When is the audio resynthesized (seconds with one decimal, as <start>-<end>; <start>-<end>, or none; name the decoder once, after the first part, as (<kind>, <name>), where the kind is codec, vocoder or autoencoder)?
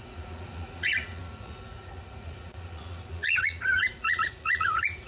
0.0-5.1 (vocoder, Vocos)